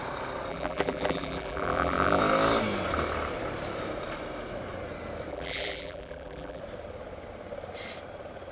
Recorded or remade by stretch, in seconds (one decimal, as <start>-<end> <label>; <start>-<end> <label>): 0.0-0.5 recorded; 0.5-2.2 remade; 2.2-5.3 recorded; 5.3-6.6 remade; 6.6-8.5 recorded